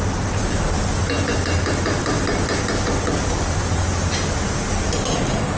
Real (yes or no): yes